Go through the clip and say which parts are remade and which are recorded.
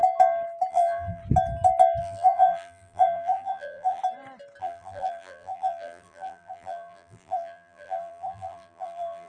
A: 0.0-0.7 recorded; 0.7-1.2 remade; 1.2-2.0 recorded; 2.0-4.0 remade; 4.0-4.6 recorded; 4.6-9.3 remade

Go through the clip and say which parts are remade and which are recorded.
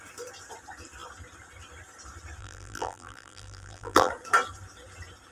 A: 0.0-2.4 recorded; 2.4-4.1 remade; 4.1-5.3 recorded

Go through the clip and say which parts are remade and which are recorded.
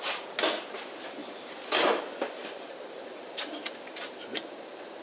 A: 0.0-1.2 recorded; 1.2-2.0 remade; 2.0-2.4 recorded; 2.4-5.0 remade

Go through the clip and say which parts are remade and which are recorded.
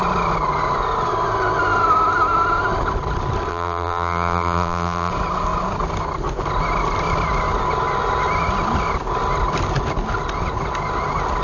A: 0.0-3.5 recorded; 3.5-5.1 remade; 5.1-11.4 recorded